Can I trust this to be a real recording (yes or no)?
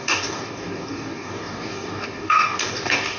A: no